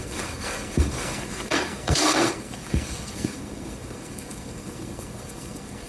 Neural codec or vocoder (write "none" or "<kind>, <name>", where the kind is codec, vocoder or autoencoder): codec, SNAC